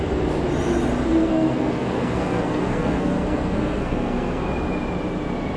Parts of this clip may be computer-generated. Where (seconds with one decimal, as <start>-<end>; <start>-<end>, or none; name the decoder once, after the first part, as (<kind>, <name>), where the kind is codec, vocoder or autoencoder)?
1.1-4.5 (codec, SNAC)